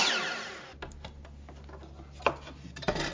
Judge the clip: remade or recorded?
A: recorded